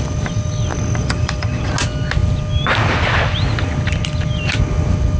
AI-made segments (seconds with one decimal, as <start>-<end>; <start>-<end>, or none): 0.7-1.7